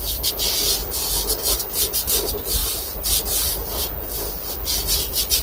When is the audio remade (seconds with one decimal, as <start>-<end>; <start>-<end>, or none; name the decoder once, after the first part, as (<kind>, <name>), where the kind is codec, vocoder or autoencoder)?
none